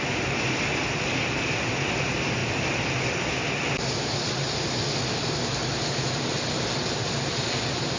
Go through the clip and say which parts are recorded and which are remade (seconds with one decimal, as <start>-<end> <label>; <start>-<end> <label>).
0.0-8.0 recorded